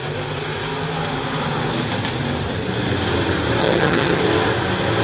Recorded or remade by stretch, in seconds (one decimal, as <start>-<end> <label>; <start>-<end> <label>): 0.0-3.6 recorded; 3.6-4.2 remade; 4.2-5.0 recorded